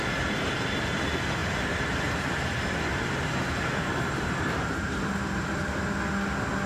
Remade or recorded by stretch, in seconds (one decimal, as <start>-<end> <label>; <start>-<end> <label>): 0.0-1.4 recorded; 1.4-5.0 remade; 5.0-6.7 recorded